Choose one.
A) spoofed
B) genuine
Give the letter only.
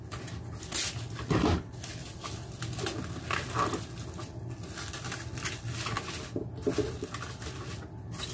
B